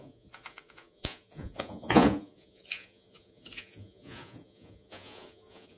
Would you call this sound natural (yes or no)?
no